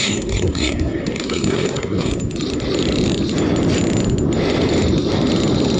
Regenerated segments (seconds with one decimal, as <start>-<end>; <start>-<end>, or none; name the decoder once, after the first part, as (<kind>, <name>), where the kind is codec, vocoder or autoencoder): 0.0-2.1 (codec, SNAC)